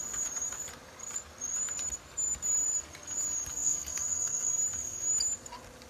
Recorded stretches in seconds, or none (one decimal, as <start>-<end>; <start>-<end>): 0.0-3.5; 4.5-5.9